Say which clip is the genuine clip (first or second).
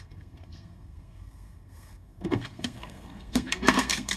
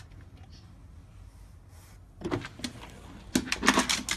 second